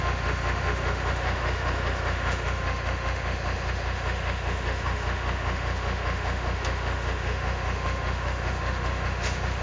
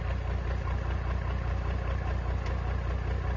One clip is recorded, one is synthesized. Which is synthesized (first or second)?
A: first